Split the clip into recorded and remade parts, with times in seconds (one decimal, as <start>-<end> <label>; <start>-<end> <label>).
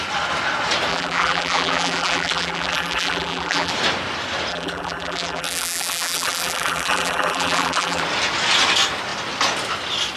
0.0-0.9 recorded; 0.9-3.7 remade; 3.7-4.5 recorded; 4.5-8.0 remade; 8.0-10.2 recorded